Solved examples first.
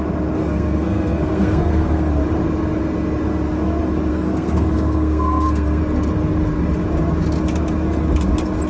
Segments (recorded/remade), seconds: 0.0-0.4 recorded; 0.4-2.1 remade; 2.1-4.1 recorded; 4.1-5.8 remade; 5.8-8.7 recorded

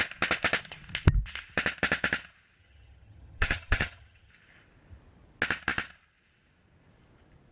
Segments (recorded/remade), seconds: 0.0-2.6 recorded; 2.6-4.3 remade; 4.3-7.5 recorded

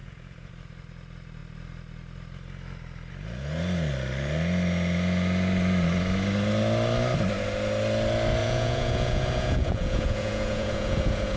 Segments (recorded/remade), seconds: 0.0-0.5 remade; 0.5-8.4 recorded; 8.4-11.4 remade

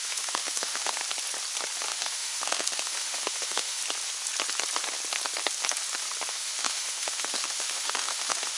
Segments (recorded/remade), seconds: 0.0-1.0 remade; 1.0-1.9 recorded; 1.9-3.8 remade; 3.8-6.3 recorded; 6.3-8.6 remade

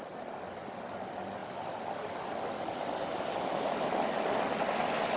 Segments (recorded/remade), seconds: 0.0-5.2 recorded

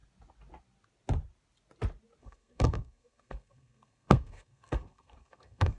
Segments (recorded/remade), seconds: 0.0-2.2 recorded; 2.2-5.8 remade

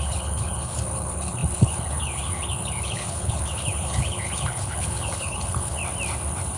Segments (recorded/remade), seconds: 0.0-5.8 remade; 5.8-6.6 recorded

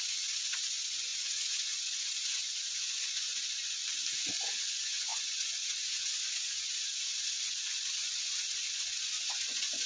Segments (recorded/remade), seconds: 0.0-3.8 remade; 3.8-4.4 recorded; 4.4-9.9 remade